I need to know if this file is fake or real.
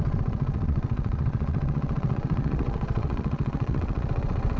fake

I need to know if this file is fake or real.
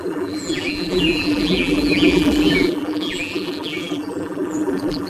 fake